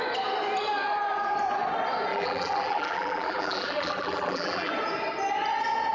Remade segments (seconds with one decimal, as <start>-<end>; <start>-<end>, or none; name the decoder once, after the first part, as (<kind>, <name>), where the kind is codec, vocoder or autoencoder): 2.1-4.7 (vocoder, BigVGAN v2)